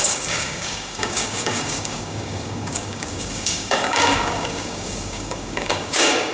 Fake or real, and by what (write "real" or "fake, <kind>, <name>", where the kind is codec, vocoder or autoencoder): fake, codec, DAC